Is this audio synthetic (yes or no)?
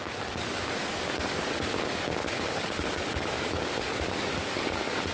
yes